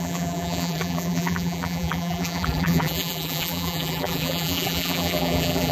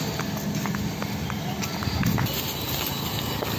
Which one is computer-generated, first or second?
first